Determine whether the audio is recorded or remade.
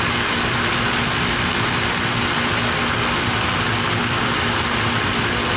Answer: recorded